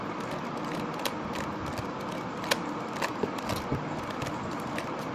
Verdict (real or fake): fake